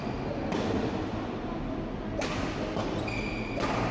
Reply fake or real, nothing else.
real